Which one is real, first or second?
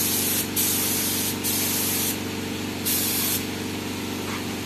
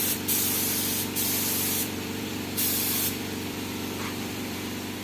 first